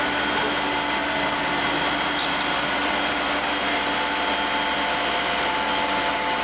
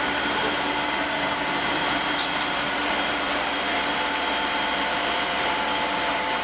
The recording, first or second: first